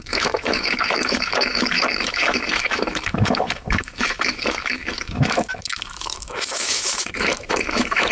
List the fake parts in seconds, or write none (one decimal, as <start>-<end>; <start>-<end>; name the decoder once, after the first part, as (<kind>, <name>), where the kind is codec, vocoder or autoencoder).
0.0-8.1 (autoencoder, DAC-VAE)